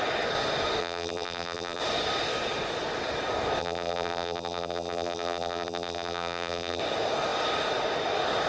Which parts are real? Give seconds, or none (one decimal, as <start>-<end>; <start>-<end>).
0.0-0.8; 1.8-3.6; 6.8-8.5